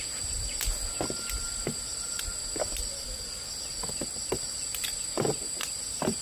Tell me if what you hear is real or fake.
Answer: real